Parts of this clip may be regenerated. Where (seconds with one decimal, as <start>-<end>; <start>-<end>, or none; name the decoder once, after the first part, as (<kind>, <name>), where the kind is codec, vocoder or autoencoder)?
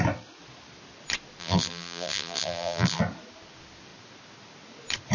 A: 1.4-3.0 (vocoder, BigVGAN v2)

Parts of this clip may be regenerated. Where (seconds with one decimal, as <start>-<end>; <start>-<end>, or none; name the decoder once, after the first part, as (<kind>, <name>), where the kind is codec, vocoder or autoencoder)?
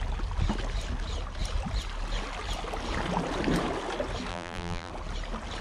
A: 4.3-4.9 (vocoder, BigVGAN v2)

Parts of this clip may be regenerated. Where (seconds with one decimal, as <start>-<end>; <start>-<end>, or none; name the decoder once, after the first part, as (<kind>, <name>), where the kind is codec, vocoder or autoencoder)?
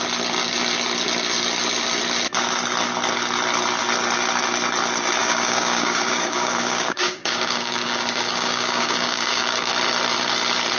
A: 5.2-9.7 (codec, DAC)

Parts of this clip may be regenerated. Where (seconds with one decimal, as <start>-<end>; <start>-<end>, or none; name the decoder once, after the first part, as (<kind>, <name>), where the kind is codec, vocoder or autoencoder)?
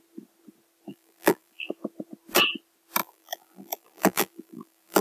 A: 0.9-1.7 (vocoder, BigVGAN v2); 3.0-5.0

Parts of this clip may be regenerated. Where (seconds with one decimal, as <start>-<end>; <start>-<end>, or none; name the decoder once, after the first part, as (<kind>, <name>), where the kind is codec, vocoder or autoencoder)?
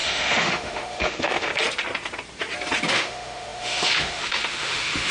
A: 0.0-1.5 (autoencoder, DAC-VAE); 2.9-5.1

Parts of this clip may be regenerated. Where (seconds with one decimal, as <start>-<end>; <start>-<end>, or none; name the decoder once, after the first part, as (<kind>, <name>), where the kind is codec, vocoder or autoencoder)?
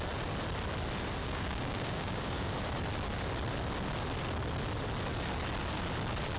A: 1.2-2.5 (codec, DAC)